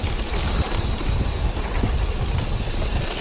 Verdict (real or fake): real